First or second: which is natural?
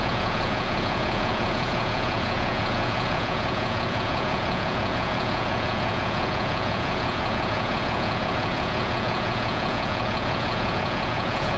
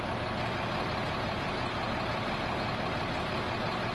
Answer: second